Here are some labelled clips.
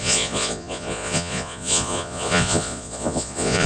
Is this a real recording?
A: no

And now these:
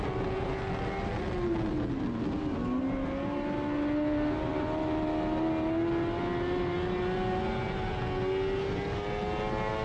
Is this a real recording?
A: yes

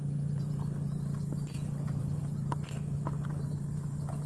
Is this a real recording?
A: yes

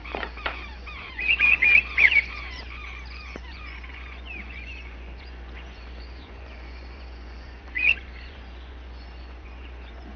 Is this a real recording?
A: no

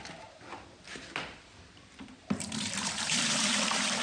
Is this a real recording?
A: no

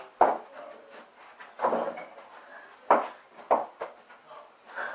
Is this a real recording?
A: yes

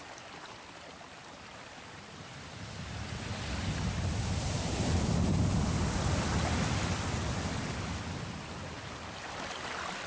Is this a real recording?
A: yes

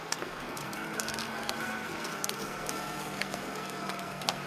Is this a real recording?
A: no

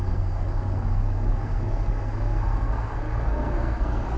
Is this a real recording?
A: no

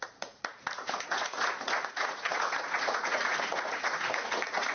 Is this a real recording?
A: no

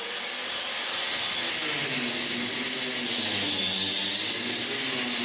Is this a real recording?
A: yes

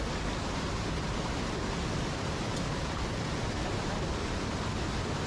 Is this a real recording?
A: yes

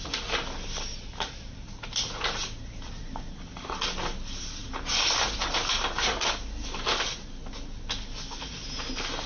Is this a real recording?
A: yes